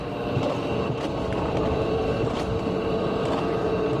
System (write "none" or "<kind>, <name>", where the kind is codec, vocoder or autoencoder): none